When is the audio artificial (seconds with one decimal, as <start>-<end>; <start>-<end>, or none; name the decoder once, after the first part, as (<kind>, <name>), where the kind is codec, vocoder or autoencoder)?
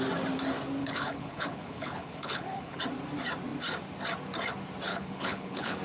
0.8-2.8 (codec, HILCodec); 4.9-5.8